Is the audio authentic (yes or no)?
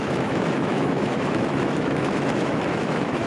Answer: no